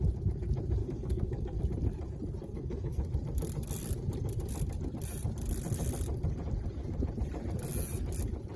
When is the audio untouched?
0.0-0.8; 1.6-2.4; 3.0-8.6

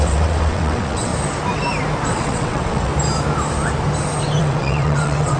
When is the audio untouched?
1.1-2.1; 2.9-4.4

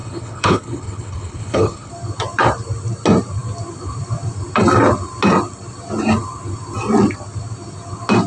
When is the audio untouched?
1.9-8.3

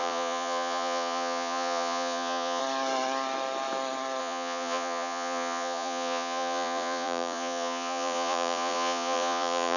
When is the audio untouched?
2.6-4.2